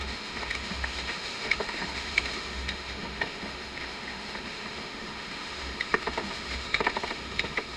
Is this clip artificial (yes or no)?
yes